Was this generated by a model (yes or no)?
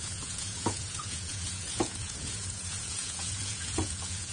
yes